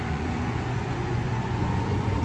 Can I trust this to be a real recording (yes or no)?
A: no